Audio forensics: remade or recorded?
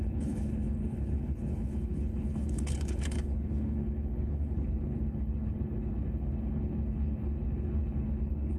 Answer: remade